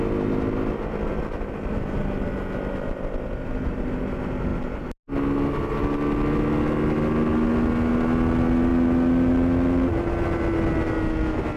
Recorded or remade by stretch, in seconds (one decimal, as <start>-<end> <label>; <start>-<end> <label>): 0.0-11.6 recorded